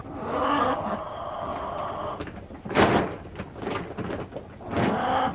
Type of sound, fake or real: real